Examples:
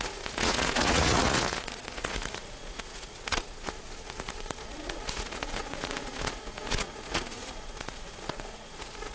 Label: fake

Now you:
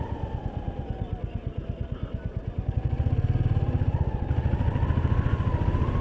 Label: real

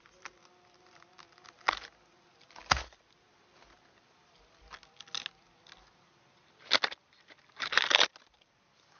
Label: real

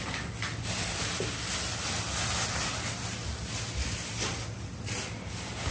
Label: real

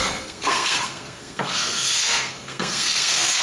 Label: fake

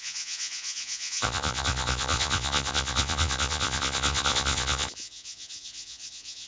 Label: fake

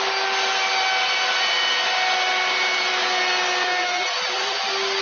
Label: real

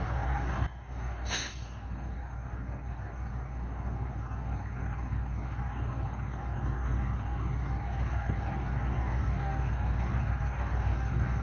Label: fake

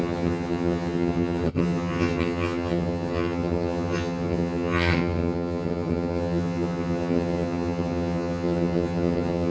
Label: fake